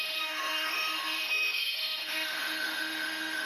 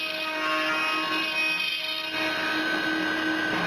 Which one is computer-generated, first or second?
first